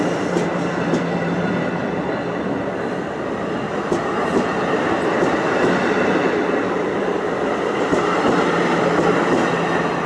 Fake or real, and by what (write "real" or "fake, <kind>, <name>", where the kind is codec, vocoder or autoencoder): real